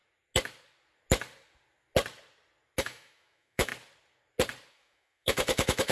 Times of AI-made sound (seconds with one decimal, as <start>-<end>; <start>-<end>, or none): 2.8-3.7; 4.7-5.9